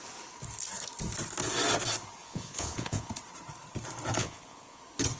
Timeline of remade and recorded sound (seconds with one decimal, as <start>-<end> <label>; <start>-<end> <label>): 0.0-2.2 recorded; 2.2-3.1 remade; 3.1-4.2 recorded; 4.2-4.8 remade; 4.8-5.2 recorded

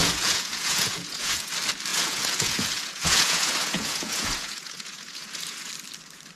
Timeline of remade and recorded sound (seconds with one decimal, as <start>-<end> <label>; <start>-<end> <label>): 0.0-1.5 remade; 1.5-1.9 recorded; 1.9-5.7 remade; 5.7-6.4 recorded

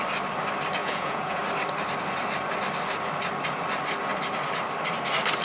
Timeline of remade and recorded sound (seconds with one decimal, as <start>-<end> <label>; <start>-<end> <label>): 0.0-0.8 recorded; 0.8-1.4 remade; 1.4-5.4 recorded

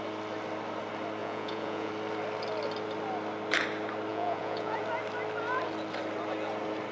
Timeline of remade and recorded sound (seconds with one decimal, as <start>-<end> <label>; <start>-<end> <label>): 0.0-1.2 recorded; 1.2-1.9 remade; 1.9-4.1 recorded; 4.1-4.8 remade; 4.8-6.9 recorded